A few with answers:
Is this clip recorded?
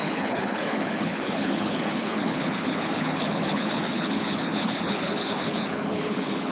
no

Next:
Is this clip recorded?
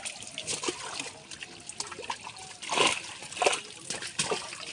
yes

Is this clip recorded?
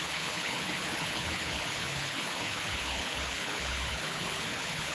no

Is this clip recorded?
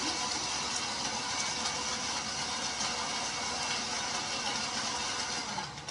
yes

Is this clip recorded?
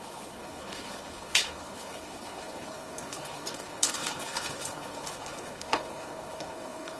no